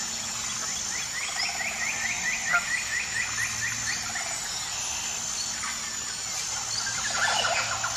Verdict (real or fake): real